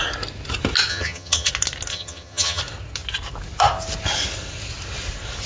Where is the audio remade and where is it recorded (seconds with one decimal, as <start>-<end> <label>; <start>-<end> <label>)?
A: 0.0-0.9 recorded; 0.9-1.5 remade; 1.5-1.9 recorded; 1.9-2.6 remade; 2.6-5.5 recorded

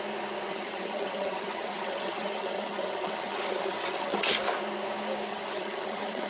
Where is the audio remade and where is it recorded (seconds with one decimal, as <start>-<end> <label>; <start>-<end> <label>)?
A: 0.0-0.5 recorded; 0.5-4.3 remade; 4.3-5.3 recorded; 5.3-6.3 remade

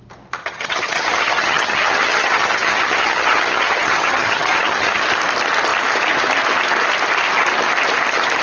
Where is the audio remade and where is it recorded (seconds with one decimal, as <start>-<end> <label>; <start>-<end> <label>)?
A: 0.0-0.4 recorded; 0.4-5.0 remade; 5.0-8.4 recorded

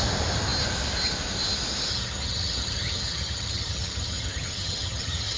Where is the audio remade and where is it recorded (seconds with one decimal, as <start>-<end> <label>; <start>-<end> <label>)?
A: 0.0-1.9 recorded; 1.9-5.4 remade

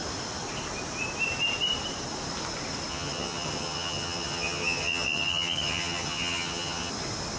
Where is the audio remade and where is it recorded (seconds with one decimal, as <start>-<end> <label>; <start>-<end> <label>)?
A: 0.0-2.9 recorded; 2.9-6.9 remade; 6.9-7.4 recorded

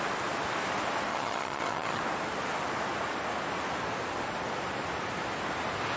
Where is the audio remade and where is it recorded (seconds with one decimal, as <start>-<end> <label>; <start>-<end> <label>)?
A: 0.0-1.1 recorded; 1.1-2.0 remade; 2.0-6.0 recorded

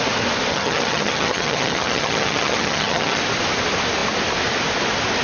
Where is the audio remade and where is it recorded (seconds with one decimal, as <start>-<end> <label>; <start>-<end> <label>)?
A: 0.0-0.5 recorded; 0.5-3.2 remade; 3.2-5.2 recorded

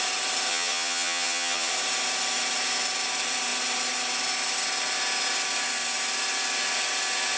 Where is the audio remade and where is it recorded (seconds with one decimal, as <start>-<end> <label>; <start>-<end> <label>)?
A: 0.0-0.5 recorded; 0.5-1.7 remade; 1.7-7.4 recorded